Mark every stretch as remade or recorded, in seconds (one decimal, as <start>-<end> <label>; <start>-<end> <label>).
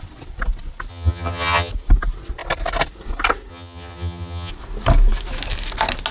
0.0-0.9 recorded; 0.9-1.7 remade; 1.7-3.5 recorded; 3.5-4.5 remade; 4.5-6.1 recorded